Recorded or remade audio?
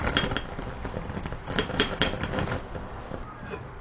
recorded